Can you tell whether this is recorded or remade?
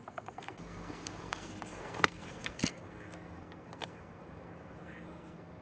remade